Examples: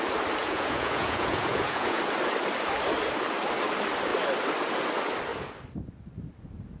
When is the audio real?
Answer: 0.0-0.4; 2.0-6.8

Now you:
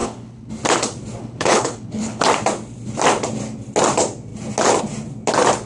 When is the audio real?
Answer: 0.5-1.2; 2.2-5.7

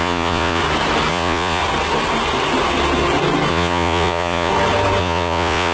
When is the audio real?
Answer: 0.6-1.1; 1.6-3.5; 4.5-5.0

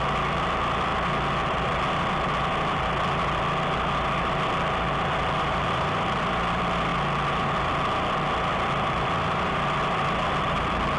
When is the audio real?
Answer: 0.9-5.6; 6.9-8.5